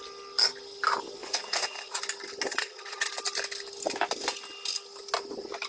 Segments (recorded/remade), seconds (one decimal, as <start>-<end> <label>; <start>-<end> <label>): 0.0-1.2 recorded; 1.2-2.0 remade; 2.0-2.5 recorded; 2.5-3.1 remade; 3.1-5.7 recorded